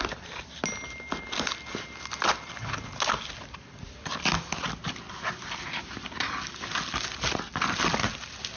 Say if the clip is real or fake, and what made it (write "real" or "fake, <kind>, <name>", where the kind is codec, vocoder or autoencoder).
real